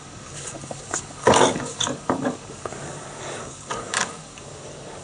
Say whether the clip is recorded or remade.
remade